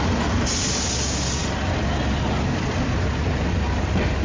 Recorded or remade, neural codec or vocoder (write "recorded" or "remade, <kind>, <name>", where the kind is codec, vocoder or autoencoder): recorded